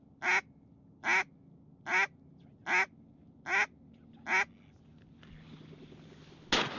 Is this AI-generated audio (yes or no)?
no